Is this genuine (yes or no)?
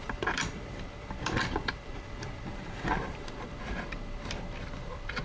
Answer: no